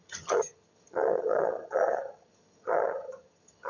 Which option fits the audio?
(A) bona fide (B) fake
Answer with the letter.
B